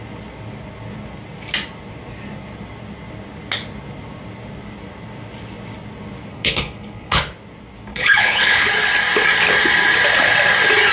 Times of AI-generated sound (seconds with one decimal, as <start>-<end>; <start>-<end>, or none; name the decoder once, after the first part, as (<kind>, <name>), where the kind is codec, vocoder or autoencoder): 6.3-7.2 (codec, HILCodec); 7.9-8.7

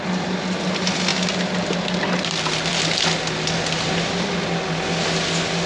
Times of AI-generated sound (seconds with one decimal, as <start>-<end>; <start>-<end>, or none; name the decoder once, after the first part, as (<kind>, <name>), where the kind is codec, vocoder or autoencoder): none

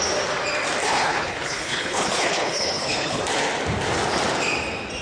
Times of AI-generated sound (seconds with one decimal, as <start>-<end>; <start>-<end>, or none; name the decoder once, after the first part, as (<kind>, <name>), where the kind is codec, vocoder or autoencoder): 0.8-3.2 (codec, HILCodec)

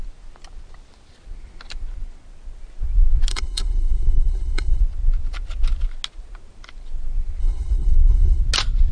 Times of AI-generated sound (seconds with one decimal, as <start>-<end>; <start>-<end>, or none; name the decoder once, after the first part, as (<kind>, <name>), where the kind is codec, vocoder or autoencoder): 3.3-4.8 (codec, HILCodec); 7.4-8.4

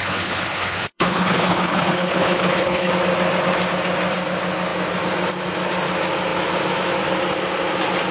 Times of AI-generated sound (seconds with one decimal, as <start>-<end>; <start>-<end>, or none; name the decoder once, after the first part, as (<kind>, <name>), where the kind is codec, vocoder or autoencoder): 0.0-2.9 (codec, HILCodec)